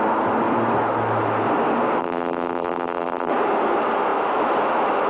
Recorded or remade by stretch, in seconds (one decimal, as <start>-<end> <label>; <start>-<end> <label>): 0.0-2.0 recorded; 2.0-3.3 remade; 3.3-5.1 recorded

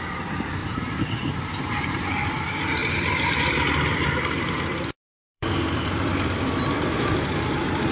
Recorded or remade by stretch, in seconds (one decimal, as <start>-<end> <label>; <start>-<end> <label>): 0.0-0.6 recorded; 0.6-1.7 remade; 1.7-2.8 recorded; 2.8-6.1 remade; 6.1-7.9 recorded

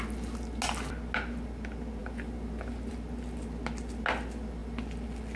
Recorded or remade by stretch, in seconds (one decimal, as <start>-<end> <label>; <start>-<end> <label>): 0.0-5.4 recorded

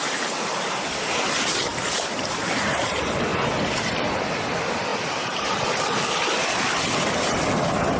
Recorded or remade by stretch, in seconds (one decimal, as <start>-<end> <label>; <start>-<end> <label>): 0.0-1.7 recorded; 1.7-2.5 remade; 2.5-3.3 recorded; 3.3-4.1 remade; 4.1-4.9 recorded; 4.9-7.4 remade; 7.4-8.0 recorded

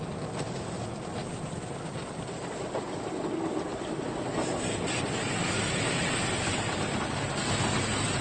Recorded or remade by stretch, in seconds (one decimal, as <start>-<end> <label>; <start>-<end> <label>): 0.0-1.2 recorded; 1.2-2.6 remade; 2.6-8.2 recorded

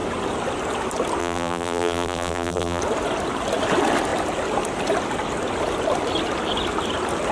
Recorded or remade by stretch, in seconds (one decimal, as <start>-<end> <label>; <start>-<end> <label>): 0.0-1.2 recorded; 1.2-2.8 remade; 2.8-7.3 recorded

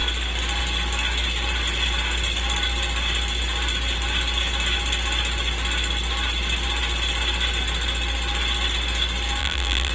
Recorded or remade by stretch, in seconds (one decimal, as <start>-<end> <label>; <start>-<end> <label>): 0.0-9.4 recorded; 9.4-9.9 remade